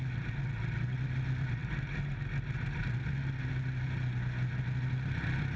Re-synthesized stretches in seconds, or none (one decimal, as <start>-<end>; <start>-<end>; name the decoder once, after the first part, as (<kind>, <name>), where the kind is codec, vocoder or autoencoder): none